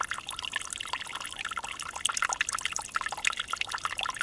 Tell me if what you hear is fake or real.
real